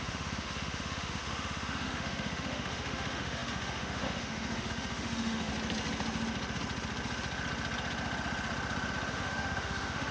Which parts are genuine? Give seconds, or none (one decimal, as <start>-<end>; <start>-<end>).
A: 5.5-9.1